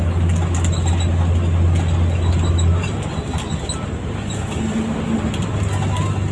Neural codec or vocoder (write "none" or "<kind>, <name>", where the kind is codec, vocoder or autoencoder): none